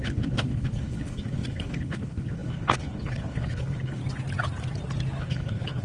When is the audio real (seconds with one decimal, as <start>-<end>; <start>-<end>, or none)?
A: 4.0-5.2